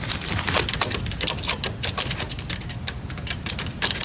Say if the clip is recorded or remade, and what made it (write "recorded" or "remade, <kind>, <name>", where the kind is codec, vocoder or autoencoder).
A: recorded